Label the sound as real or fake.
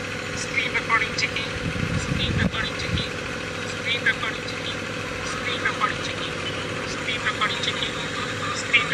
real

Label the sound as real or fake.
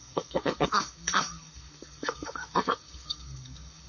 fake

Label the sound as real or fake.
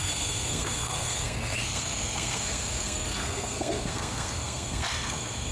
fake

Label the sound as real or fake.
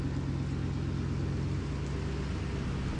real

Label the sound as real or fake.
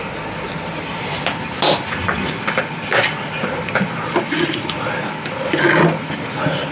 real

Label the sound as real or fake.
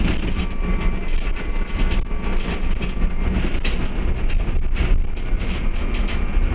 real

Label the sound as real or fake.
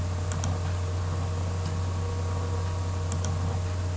real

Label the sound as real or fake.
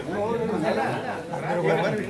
real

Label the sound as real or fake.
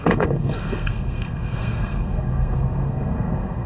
fake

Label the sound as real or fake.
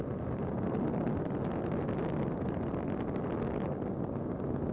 real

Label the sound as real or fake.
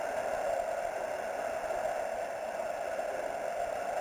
real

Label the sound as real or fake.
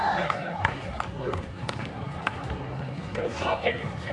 fake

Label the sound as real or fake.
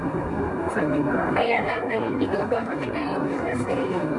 fake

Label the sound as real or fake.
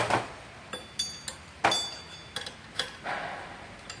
real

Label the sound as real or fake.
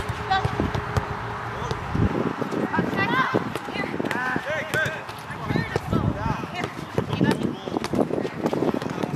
real